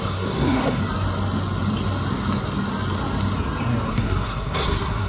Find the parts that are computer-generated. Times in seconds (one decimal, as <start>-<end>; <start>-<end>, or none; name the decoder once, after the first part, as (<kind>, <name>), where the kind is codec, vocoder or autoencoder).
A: 0.0-0.8 (codec, SNAC); 3.9-5.1